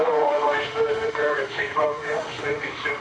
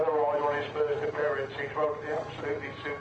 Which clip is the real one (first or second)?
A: second